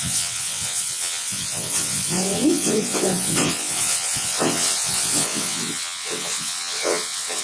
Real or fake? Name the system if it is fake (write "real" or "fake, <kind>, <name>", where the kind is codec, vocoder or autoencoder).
fake, vocoder, WaveNeXt